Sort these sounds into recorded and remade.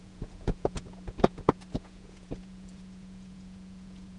remade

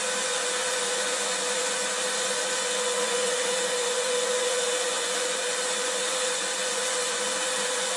remade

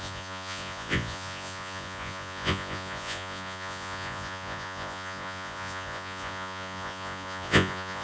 remade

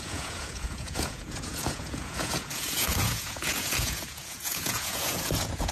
remade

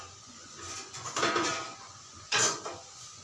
remade